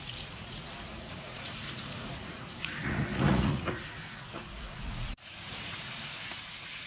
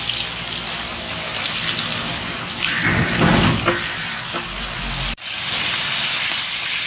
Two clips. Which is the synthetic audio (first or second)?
first